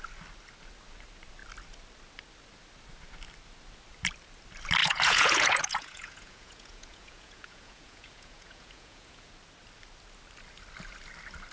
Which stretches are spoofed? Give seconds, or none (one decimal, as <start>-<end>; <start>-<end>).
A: 4.8-9.3